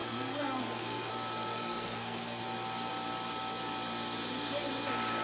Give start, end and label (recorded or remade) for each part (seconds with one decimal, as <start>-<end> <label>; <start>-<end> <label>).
0.0-1.1 remade; 1.1-1.5 recorded; 1.5-2.4 remade; 2.4-5.2 recorded